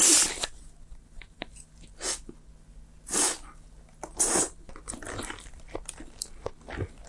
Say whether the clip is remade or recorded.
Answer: recorded